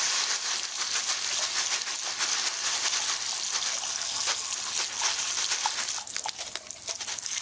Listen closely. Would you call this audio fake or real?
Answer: real